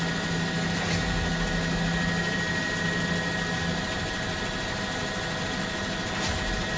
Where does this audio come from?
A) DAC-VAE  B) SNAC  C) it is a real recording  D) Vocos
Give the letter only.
C